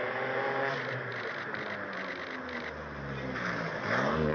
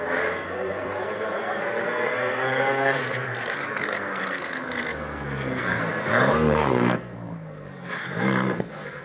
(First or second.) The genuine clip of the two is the first